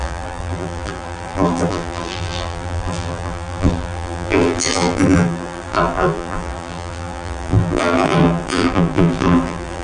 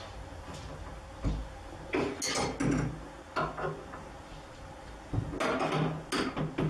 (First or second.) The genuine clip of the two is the second